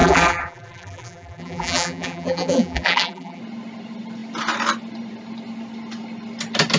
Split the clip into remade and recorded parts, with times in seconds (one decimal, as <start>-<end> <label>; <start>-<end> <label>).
0.0-3.4 remade; 3.4-6.8 recorded